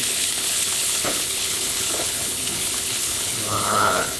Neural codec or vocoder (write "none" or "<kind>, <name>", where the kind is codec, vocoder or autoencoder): codec, HILCodec